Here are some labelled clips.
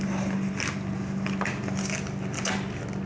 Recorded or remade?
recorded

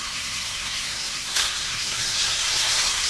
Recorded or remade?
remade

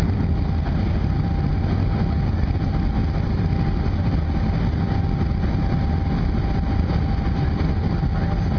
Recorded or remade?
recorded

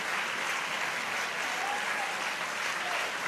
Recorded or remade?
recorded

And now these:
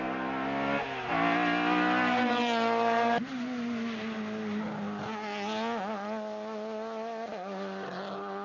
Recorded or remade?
recorded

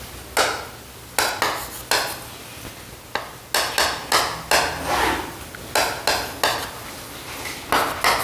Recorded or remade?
recorded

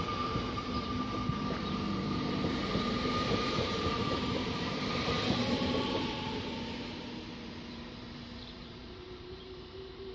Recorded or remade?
remade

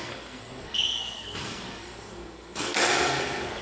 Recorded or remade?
remade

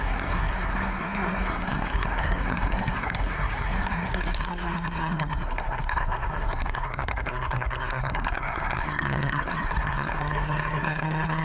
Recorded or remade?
remade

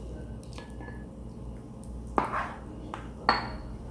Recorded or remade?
recorded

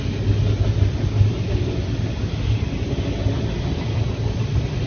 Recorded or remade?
recorded